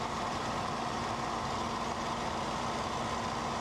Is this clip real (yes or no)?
yes